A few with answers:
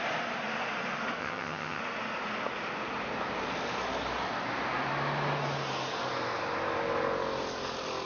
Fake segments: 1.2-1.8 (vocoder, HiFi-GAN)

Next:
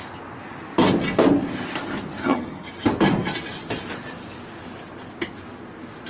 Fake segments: 2.2-2.7 (vocoder, HiFi-GAN)

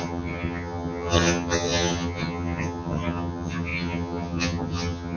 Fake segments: 0.0-5.2 (vocoder, HiFi-GAN)

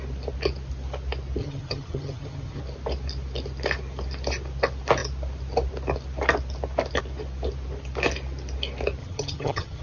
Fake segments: 1.4-2.6 (vocoder, HiFi-GAN); 9.0-9.8

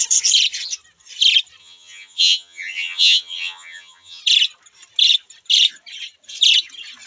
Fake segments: 1.6-4.2 (vocoder, HiFi-GAN)

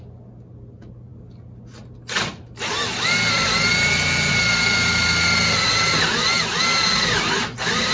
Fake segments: none

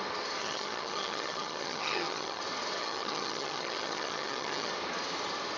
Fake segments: 0.4-2.4 (vocoder, HiFi-GAN); 2.8-4.7